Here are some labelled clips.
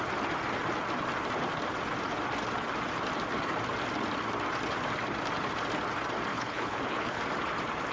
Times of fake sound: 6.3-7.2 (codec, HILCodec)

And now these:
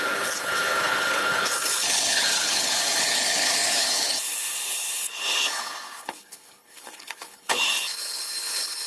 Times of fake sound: 0.0-8.9 (codec, HILCodec)

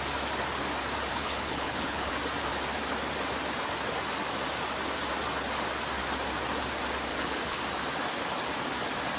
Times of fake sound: 1.1-2.1 (codec, HILCodec); 7.1-7.6

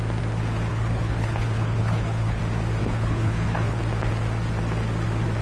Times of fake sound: 0.7-2.4 (codec, HILCodec); 2.8-3.8

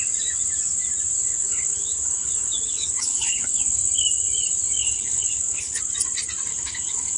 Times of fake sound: 1.2-3.6 (codec, HILCodec); 4.8-5.8; 6.5-7.2